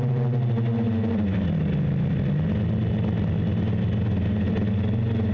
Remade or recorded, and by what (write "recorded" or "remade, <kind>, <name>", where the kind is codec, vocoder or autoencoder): recorded